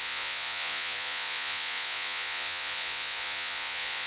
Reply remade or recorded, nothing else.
remade